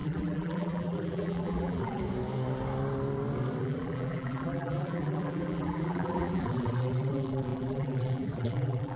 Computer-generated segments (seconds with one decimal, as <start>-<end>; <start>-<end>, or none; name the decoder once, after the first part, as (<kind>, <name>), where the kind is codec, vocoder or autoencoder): 0.0-2.0 (vocoder, BigVGAN v2); 3.6-9.0